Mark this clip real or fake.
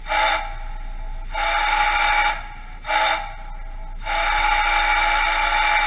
real